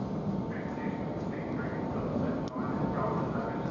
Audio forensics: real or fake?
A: real